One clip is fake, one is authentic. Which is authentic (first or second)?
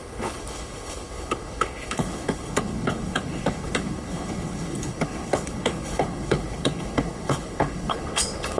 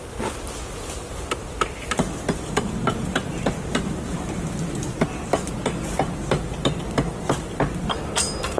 second